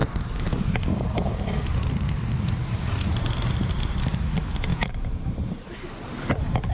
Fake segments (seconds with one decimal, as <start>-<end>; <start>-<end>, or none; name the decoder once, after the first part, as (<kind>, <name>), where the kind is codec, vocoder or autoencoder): 4.7-5.2 (vocoder, Vocos)